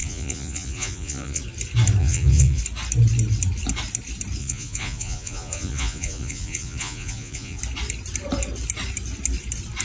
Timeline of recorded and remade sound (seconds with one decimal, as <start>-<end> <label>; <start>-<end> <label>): 0.0-1.4 remade; 1.4-2.0 recorded; 2.0-2.6 remade; 2.6-4.4 recorded; 4.4-7.6 remade; 7.6-9.8 recorded